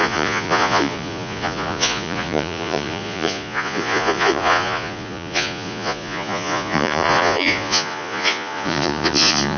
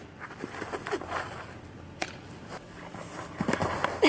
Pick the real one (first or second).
second